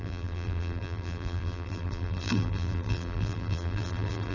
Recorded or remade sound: remade